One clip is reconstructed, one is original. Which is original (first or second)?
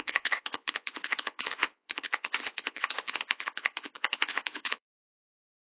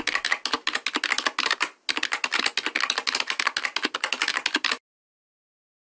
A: second